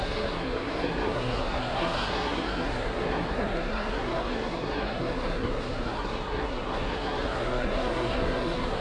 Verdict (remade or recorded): remade